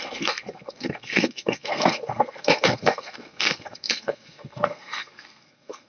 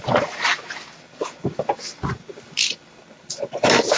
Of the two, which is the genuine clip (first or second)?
second